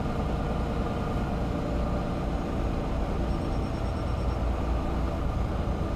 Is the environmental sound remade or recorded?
recorded